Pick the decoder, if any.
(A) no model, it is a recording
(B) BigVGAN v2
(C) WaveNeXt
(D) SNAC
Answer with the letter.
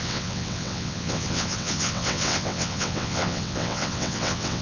C